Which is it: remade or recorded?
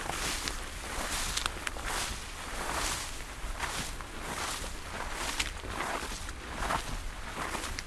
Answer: recorded